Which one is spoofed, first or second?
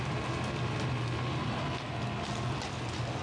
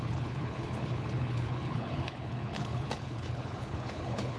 second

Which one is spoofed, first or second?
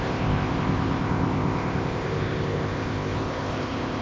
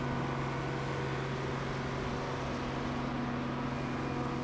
first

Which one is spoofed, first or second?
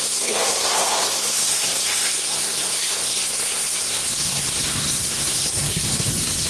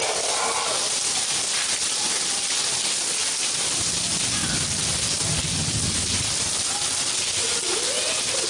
first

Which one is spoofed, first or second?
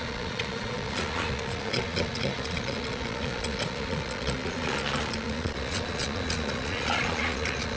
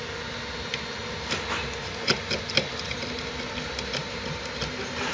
first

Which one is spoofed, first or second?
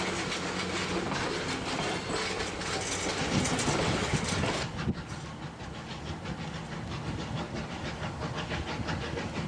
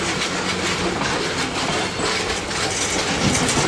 second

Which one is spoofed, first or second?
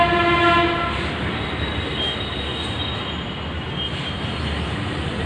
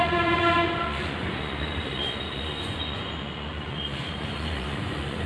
second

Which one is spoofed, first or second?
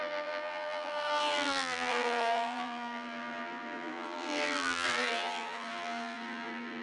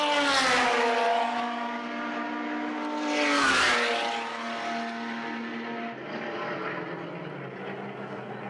first